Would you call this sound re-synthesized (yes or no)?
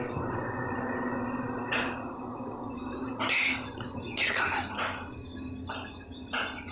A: no